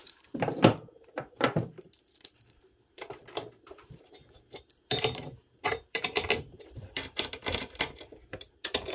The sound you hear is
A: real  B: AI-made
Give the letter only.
B